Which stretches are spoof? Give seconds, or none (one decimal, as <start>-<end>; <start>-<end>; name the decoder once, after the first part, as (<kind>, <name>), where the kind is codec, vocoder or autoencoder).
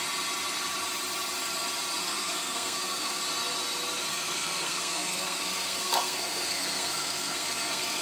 2.0-3.2 (codec, SNAC); 4.1-8.0